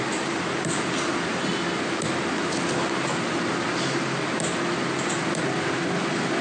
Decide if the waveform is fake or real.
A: real